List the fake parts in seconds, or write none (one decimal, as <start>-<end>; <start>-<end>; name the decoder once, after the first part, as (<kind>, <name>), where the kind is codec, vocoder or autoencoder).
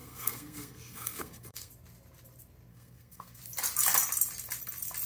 0.0-1.7 (codec, SNAC); 2.7-3.4